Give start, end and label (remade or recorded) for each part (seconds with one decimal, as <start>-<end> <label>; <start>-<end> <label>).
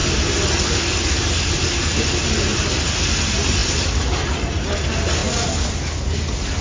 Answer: 0.0-6.6 recorded